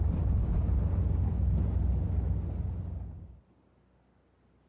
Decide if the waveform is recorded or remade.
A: recorded